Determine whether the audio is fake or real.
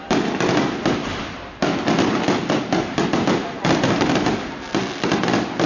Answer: real